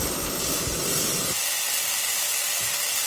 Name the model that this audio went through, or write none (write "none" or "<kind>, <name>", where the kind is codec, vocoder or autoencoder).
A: none